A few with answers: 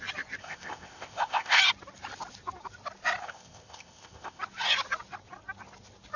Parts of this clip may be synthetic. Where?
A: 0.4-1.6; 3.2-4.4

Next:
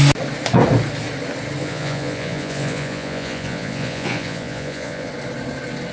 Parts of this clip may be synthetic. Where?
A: 1.6-5.1

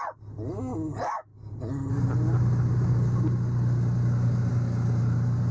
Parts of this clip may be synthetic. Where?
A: none

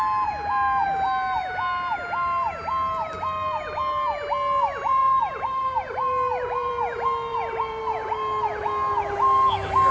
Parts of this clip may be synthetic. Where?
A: 5.0-6.7; 7.3-7.8